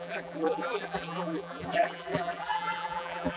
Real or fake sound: fake